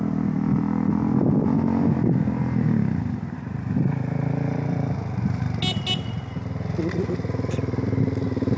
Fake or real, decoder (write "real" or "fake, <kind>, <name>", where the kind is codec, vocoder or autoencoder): real